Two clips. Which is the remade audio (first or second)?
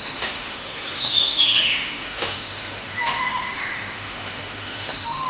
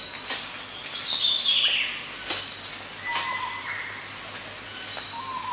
first